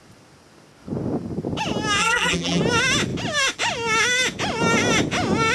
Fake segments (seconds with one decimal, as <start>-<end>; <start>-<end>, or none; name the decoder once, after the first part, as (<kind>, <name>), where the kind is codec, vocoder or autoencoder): 2.0-2.6 (vocoder, BigVGAN v2)